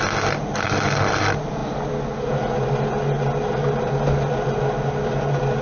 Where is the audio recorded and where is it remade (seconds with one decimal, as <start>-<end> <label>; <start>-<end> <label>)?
0.0-5.6 recorded